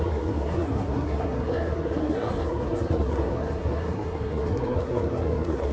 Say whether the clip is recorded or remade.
remade